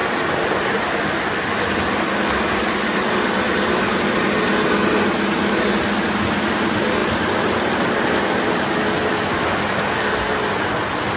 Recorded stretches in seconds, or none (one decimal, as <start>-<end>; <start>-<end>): 0.0-11.2